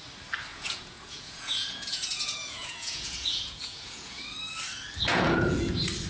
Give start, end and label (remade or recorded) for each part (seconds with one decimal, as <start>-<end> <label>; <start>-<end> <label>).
0.0-0.5 recorded; 0.5-4.2 remade; 4.2-5.1 recorded; 5.1-5.6 remade; 5.6-6.1 recorded